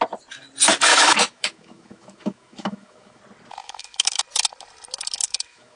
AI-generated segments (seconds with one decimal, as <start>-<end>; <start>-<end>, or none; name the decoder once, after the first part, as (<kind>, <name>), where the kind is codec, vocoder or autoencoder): 0.9-3.2 (autoencoder, DAC-VAE); 3.6-4.2; 5.2-5.8